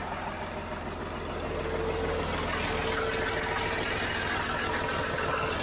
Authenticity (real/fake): real